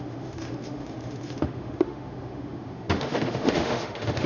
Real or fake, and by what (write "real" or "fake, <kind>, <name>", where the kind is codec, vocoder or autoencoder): fake, autoencoder, DAC-VAE